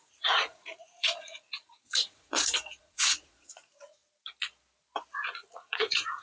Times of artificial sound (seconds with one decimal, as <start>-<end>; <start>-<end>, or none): 0.0-4.0; 5.5-6.2